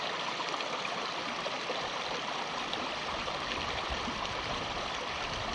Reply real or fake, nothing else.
fake